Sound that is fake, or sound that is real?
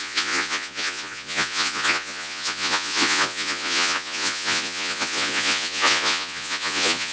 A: fake